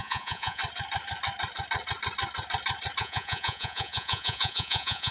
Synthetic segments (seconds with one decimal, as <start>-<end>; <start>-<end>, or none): 0.0-0.6; 3.0-5.1

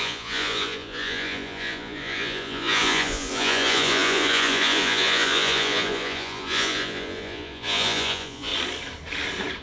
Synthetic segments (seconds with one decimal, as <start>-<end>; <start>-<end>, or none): 0.0-8.5